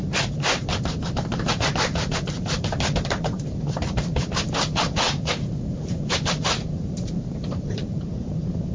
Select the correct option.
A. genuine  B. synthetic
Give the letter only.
B